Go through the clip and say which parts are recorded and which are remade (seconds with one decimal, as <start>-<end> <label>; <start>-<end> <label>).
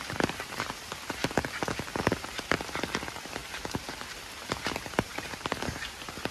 0.0-1.2 remade; 1.2-3.0 recorded; 3.0-3.4 remade; 3.4-4.4 recorded; 4.4-6.3 remade